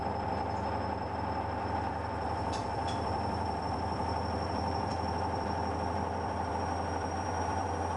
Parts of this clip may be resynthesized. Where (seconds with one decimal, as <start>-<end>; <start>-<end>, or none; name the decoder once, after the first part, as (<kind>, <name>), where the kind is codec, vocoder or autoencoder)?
0.0-8.0 (vocoder, BigVGAN v2)